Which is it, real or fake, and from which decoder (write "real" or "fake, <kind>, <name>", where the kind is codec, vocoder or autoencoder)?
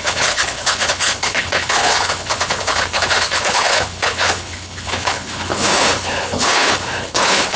fake, codec, HILCodec